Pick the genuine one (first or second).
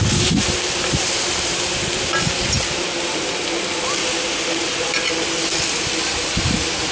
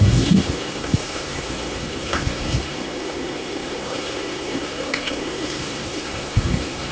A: first